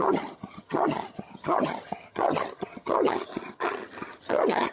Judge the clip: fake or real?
fake